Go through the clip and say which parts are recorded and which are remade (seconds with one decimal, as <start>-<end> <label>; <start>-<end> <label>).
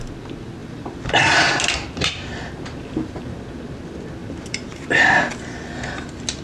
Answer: 0.0-0.6 recorded; 0.6-3.4 remade; 3.4-4.2 recorded; 4.2-5.3 remade; 5.3-6.4 recorded